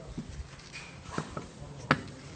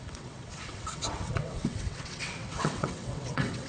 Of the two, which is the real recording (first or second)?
first